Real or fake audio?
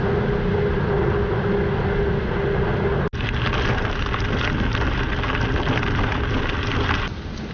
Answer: real